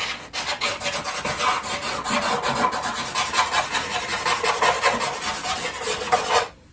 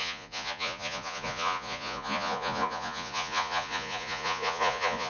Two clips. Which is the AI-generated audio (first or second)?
second